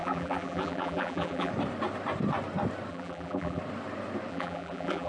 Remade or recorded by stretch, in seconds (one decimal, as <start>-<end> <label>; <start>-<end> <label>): 0.0-1.5 remade; 1.5-2.9 recorded; 2.9-3.6 remade; 3.6-4.3 recorded; 4.3-5.1 remade